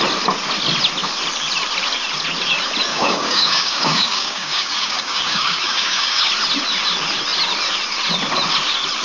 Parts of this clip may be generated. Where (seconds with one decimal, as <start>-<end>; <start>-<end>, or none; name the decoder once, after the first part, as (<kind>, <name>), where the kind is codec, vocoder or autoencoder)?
2.9-6.3 (codec, DAC)

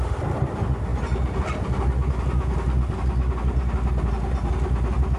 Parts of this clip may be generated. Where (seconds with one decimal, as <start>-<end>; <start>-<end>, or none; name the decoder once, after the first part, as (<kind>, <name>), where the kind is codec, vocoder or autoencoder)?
none

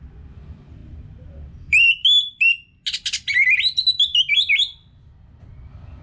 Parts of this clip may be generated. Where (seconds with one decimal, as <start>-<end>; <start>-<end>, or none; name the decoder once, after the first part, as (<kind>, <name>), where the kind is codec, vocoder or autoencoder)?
none

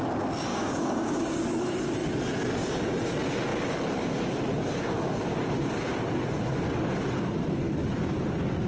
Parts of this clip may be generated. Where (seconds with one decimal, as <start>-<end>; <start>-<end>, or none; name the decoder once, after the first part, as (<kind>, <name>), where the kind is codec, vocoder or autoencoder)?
0.5-1.4 (codec, DAC)

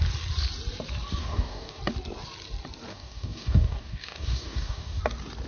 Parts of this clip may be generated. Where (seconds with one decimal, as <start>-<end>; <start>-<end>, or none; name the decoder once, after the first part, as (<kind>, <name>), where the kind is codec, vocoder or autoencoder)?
1.2-1.8 (codec, DAC); 2.9-5.0

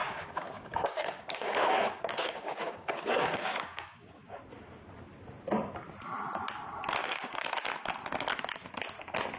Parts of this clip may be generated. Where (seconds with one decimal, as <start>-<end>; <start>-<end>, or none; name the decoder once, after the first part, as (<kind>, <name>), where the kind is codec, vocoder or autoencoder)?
0.0-4.4 (codec, DAC); 7.0-7.6

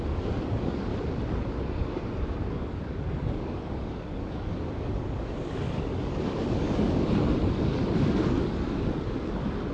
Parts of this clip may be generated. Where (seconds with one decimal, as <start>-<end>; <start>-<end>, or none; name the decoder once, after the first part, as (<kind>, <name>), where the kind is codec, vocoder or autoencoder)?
0.0-0.9 (codec, DAC); 1.5-9.7